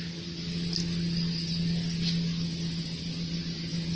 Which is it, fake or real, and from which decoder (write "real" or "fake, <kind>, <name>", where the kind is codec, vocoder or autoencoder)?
real